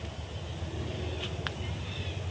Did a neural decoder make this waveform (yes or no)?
no